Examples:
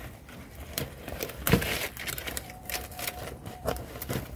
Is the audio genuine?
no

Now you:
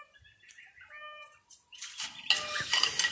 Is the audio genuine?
yes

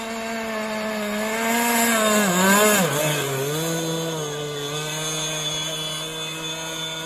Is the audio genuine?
yes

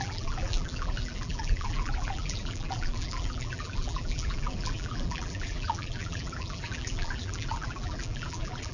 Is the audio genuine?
no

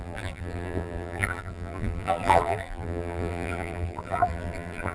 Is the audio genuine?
no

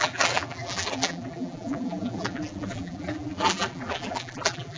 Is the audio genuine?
no